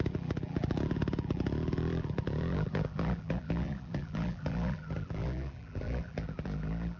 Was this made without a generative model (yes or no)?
no